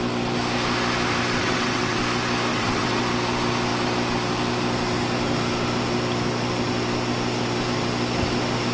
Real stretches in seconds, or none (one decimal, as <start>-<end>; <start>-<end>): 0.0-1.4; 2.0-2.5; 3.0-8.7